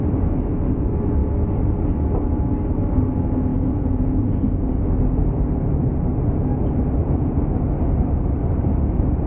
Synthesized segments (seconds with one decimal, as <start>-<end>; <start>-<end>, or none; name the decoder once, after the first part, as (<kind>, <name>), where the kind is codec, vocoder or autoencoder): 3.5-4.9 (vocoder, Vocos); 7.0-7.7